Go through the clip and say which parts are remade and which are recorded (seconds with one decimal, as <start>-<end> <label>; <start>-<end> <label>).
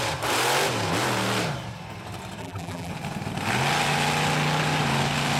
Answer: 0.0-2.4 recorded; 2.4-2.9 remade; 2.9-5.4 recorded